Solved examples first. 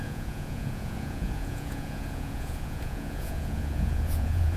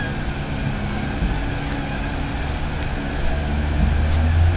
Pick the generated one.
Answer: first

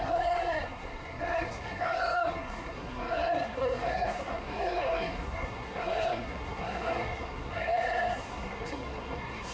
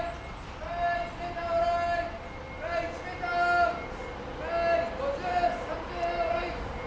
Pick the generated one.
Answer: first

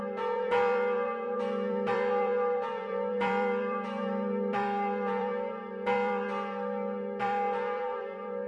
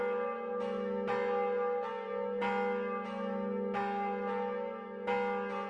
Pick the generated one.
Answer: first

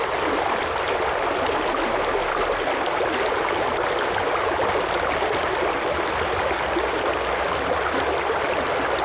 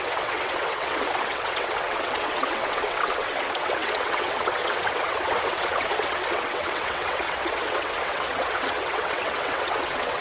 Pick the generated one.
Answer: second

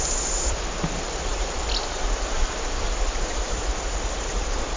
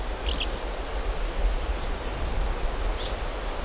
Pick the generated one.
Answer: first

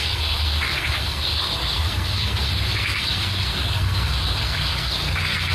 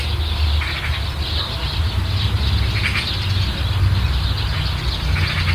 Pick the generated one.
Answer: first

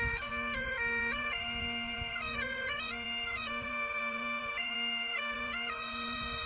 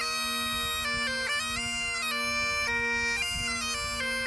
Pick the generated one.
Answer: first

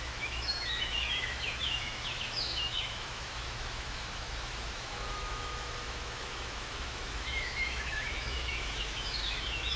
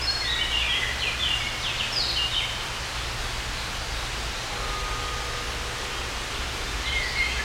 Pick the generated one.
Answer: first